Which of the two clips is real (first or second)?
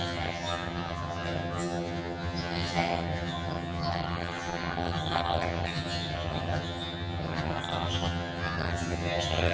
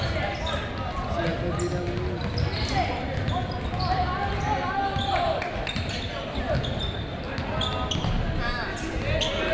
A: second